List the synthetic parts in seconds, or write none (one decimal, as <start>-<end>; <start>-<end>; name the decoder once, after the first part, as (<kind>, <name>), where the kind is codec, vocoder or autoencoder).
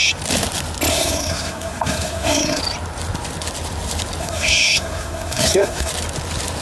0.9-2.6 (codec, SNAC); 4.2-5.9